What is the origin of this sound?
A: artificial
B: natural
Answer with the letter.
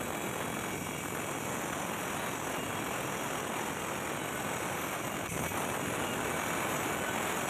B